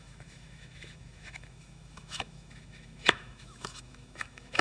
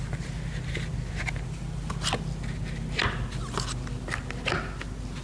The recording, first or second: second